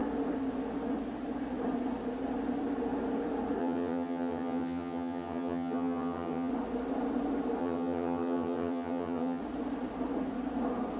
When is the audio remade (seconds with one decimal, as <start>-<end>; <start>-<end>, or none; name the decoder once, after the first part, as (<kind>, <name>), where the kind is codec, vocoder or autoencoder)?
3.6-6.5 (vocoder, HiFi-GAN); 7.6-9.4